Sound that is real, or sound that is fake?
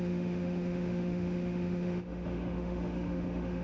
fake